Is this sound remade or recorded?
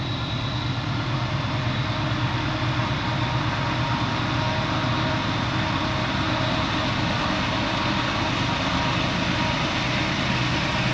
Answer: recorded